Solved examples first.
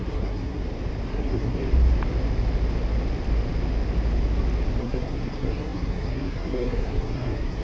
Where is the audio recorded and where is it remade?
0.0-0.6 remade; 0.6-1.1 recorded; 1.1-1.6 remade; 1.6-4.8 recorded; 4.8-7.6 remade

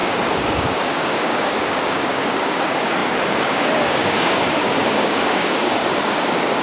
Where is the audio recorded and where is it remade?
0.0-6.6 remade